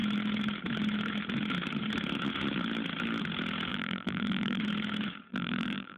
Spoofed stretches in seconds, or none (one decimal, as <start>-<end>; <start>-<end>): 3.7-4.6; 5.3-6.0